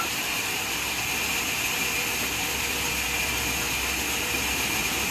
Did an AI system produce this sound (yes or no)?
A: yes